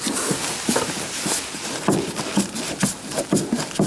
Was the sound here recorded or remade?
recorded